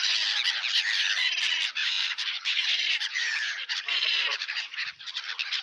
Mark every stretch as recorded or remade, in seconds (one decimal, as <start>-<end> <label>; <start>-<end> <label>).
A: 0.0-1.8 recorded; 1.8-5.6 remade